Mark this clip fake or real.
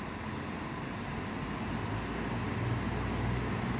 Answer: real